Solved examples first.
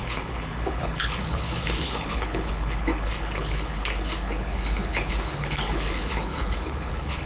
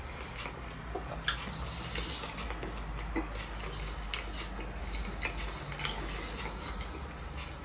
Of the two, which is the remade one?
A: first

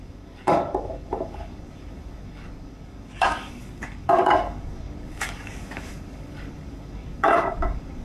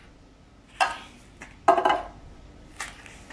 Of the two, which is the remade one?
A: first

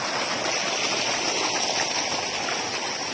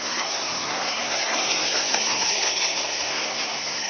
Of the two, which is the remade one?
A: second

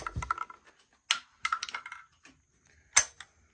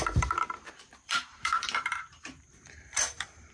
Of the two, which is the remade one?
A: second